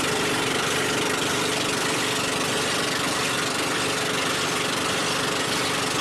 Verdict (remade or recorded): recorded